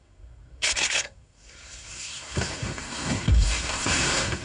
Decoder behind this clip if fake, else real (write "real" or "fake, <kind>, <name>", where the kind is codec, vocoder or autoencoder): fake, codec, SNAC